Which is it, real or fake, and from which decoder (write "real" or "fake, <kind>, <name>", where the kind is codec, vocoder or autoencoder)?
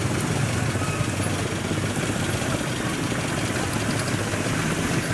real